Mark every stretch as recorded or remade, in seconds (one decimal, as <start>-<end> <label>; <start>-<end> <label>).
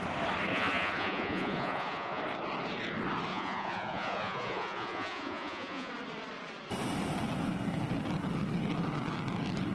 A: 0.0-0.5 recorded; 0.5-2.2 remade; 2.2-3.3 recorded; 3.3-5.9 remade; 5.9-9.7 recorded